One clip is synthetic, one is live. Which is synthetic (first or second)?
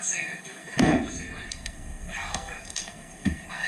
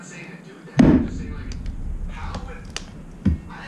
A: first